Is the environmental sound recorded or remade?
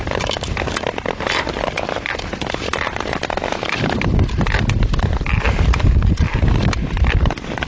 recorded